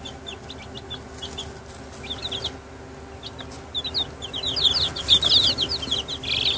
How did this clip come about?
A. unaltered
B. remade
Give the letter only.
A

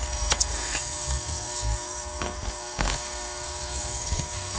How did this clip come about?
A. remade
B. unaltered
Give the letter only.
A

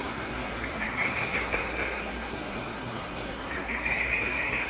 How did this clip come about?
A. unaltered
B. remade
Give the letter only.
B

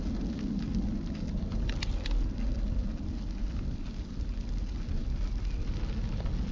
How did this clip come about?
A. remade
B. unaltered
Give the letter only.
B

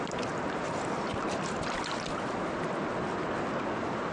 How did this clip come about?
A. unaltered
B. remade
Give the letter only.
A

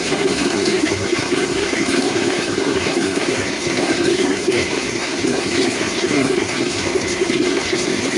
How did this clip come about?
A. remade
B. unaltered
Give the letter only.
A